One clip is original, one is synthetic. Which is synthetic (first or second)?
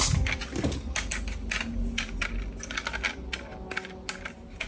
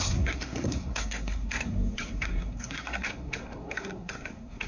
second